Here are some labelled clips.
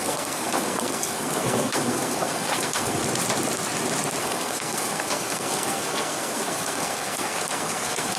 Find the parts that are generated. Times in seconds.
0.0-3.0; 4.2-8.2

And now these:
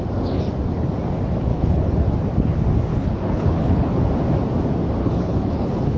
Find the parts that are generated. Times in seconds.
1.5-2.0; 2.9-4.0; 5.0-6.0

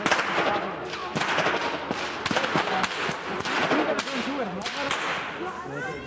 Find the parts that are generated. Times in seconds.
none

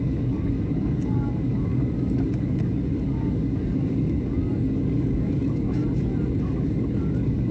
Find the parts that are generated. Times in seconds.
0.0-5.8; 6.4-7.5

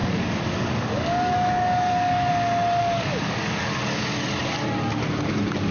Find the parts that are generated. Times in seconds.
0.0-2.3; 2.8-4.0

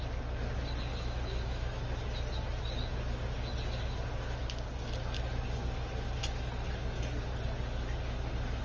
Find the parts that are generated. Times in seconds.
0.9-1.8

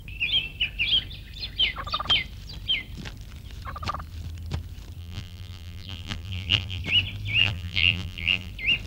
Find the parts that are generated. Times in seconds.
5.0-6.8; 7.4-8.5

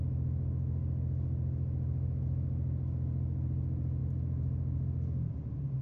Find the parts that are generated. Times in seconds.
none